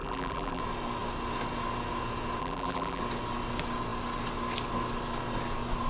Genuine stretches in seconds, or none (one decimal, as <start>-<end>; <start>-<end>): 0.6-2.4; 3.0-5.9

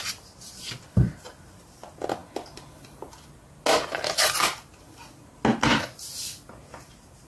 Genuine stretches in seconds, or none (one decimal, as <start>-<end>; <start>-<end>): 0.0-7.3

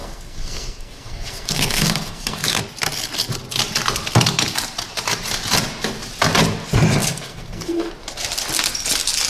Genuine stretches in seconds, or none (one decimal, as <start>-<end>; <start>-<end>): 2.6-7.0; 7.9-9.3

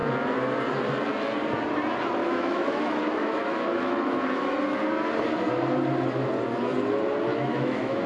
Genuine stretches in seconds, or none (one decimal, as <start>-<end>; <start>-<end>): 0.0-2.2; 4.6-7.3

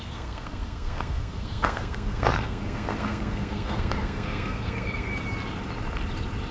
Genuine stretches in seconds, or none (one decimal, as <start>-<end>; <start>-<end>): 5.1-6.5

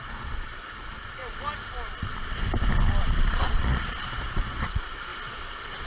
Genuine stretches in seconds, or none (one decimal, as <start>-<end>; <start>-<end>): 1.2-3.0; 5.1-5.9